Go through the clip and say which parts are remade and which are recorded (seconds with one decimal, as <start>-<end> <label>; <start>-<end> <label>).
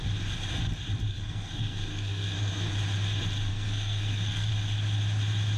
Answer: 0.0-1.1 recorded; 1.1-2.7 remade; 2.7-3.5 recorded; 3.5-4.5 remade; 4.5-5.6 recorded